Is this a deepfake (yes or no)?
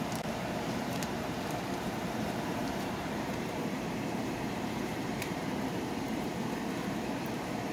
yes